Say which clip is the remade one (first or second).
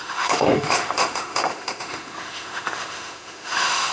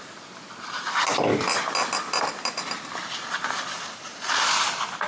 first